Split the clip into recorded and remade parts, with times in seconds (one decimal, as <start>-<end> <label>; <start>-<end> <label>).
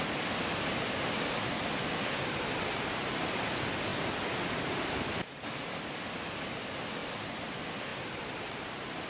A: 0.0-3.9 recorded; 3.9-5.6 remade; 5.6-7.0 recorded; 7.0-7.5 remade; 7.5-7.9 recorded; 7.9-8.4 remade; 8.4-9.1 recorded